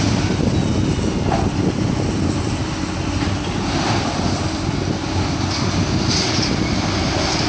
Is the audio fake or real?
real